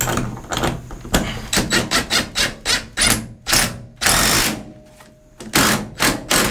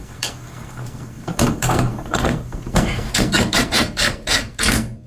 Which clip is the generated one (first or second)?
second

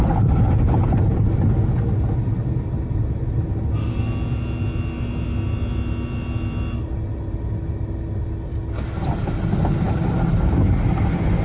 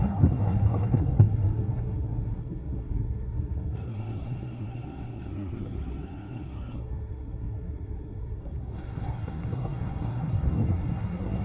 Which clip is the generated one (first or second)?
second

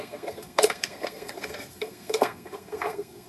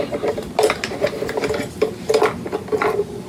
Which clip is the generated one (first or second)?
first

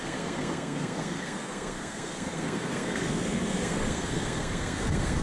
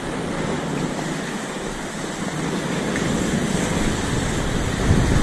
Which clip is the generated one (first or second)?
first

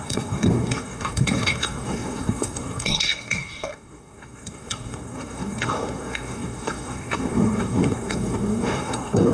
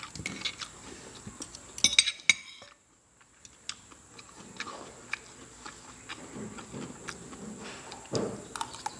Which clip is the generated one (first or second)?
first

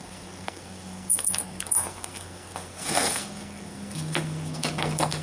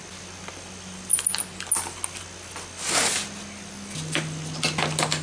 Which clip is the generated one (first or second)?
first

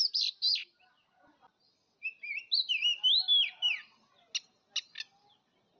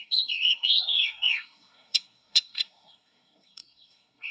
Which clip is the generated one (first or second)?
second